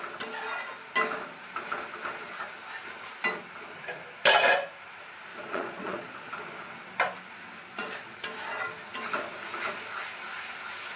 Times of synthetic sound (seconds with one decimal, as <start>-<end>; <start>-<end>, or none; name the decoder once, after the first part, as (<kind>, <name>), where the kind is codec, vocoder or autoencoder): 5.3-6.3 (vocoder, Vocos); 7.6-8.2

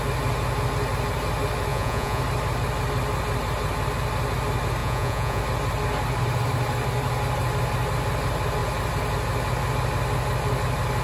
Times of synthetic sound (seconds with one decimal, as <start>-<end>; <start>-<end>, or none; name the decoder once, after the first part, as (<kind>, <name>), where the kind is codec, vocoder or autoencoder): 1.7-2.2 (vocoder, Vocos); 4.8-5.4